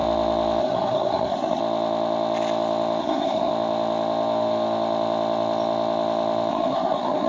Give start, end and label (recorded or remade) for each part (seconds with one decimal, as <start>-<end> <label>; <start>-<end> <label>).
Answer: 0.0-0.6 recorded; 0.6-1.6 remade; 1.6-3.0 recorded; 3.0-3.5 remade; 3.5-6.5 recorded; 6.5-7.3 remade